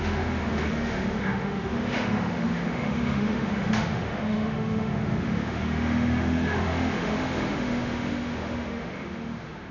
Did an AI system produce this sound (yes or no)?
yes